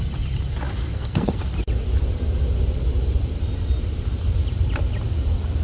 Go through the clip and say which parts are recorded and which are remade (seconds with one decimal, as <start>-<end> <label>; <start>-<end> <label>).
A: 0.0-0.8 recorded; 0.8-1.4 remade; 1.4-5.6 recorded